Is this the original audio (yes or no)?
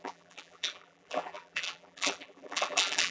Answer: no